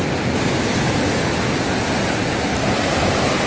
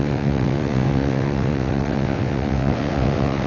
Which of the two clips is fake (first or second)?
second